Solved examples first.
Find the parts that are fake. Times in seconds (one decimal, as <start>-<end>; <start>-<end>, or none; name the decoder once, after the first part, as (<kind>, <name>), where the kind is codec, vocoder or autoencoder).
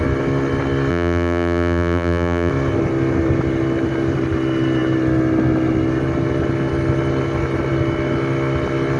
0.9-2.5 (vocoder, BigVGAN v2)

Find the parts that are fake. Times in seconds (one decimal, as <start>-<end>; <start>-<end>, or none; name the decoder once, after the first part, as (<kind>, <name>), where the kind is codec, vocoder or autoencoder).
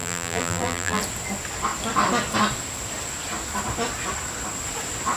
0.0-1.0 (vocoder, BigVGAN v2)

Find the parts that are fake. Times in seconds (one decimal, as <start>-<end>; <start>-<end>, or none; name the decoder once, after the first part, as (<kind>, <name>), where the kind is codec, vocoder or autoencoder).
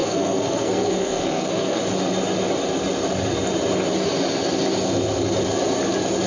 0.0-1.8 (codec, SNAC)